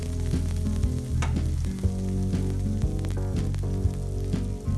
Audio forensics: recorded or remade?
recorded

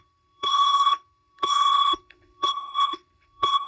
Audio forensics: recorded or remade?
remade